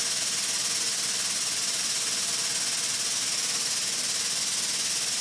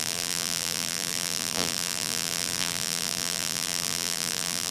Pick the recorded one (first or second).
first